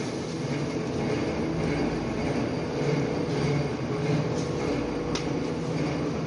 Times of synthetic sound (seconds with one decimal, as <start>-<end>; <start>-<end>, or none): none